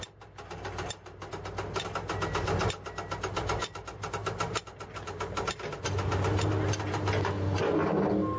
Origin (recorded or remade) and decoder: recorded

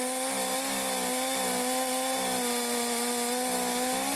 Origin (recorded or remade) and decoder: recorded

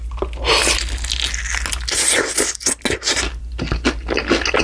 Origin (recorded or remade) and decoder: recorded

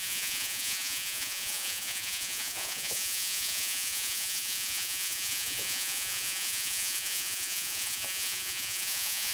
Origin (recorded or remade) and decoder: remade, vocoder, Vocos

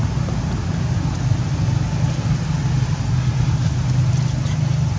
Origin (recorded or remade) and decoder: recorded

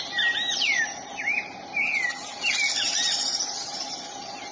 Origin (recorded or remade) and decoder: recorded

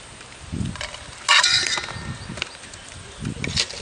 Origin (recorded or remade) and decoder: recorded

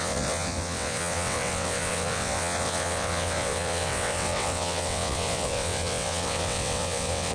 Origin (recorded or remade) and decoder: remade, vocoder, WaveNeXt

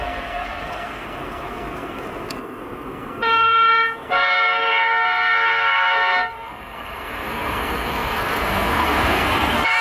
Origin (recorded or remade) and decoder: remade, codec, SNAC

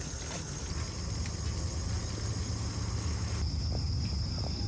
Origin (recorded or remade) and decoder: recorded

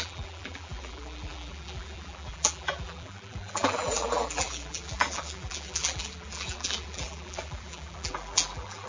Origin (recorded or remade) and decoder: remade, vocoder, BigVGAN v2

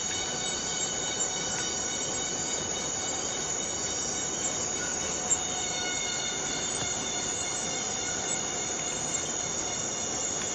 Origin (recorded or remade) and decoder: recorded